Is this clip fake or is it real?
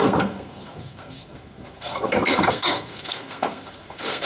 fake